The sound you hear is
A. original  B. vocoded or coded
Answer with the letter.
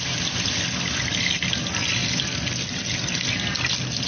A